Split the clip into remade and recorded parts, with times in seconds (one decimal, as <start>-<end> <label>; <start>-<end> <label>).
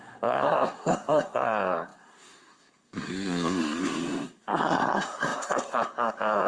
0.0-6.5 remade